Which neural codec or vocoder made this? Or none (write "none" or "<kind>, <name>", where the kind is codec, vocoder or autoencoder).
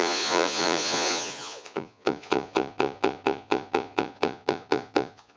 vocoder, Vocos